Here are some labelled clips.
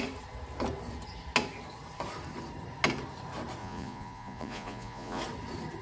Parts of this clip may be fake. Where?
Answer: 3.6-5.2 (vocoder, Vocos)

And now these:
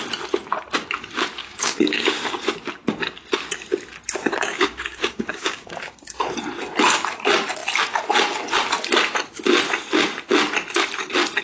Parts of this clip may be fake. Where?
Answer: 1.4-2.2 (codec, DAC); 4.2-6.2

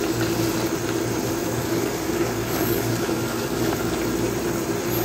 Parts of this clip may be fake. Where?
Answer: 1.4-3.8 (codec, DAC)

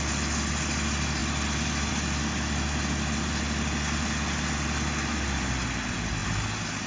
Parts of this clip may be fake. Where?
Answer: none

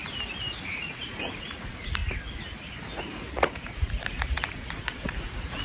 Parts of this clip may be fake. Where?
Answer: 0.6-2.0 (vocoder, Vocos); 2.8-5.6

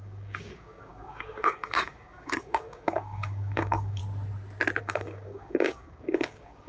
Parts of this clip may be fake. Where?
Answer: 0.0-4.0 (codec, DAC); 4.8-6.7

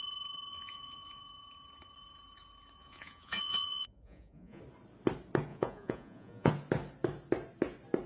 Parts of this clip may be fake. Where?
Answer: 0.5-1.2 (vocoder, Vocos); 2.8-4.6; 5.5-6.5

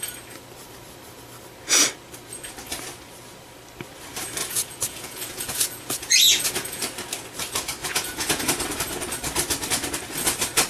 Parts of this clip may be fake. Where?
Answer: 4.4-6.8 (vocoder, Vocos); 7.8-8.4